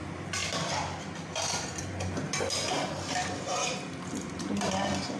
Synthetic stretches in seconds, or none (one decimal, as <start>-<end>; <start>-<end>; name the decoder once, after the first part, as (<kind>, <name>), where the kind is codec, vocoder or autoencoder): 0.4-1.8 (vocoder, BigVGAN v2); 3.2-4.8